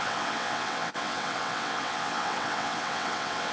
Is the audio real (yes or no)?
no